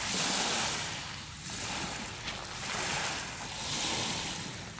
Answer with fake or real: real